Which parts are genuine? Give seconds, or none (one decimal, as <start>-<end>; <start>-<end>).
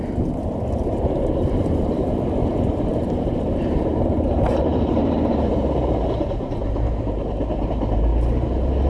8.1-8.9